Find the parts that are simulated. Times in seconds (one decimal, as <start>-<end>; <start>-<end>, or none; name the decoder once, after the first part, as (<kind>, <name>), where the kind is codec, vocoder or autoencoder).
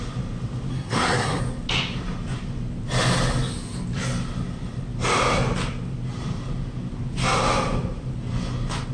0.7-1.4 (codec, SNAC)